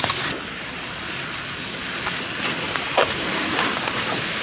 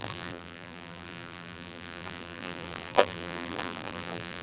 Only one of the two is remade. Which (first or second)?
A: second